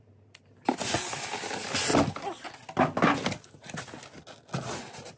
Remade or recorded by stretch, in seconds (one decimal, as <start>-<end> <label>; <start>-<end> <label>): 0.0-5.2 recorded